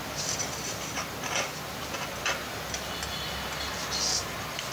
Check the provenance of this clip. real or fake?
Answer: real